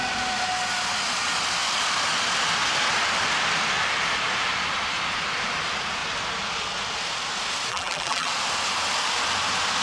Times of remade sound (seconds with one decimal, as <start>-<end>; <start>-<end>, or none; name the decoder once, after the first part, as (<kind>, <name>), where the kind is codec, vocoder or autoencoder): 7.7-8.3 (vocoder, BigVGAN v2)